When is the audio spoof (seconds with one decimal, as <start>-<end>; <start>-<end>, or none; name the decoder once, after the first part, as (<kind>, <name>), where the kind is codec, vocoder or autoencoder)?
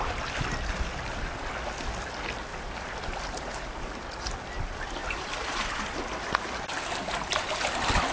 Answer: 2.5-3.7 (vocoder, BigVGAN v2); 5.0-6.6